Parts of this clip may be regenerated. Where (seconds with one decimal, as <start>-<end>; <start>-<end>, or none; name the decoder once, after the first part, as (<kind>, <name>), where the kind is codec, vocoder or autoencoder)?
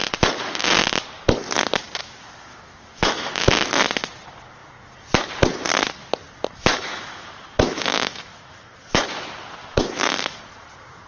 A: 2.0-3.3 (autoencoder, DAC-VAE); 6.7-9.0; 9.6-10.4